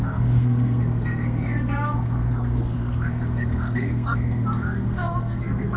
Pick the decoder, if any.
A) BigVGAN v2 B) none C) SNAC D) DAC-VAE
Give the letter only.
C